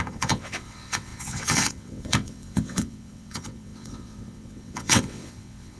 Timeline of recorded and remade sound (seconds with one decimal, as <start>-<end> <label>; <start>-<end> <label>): 0.0-5.8 remade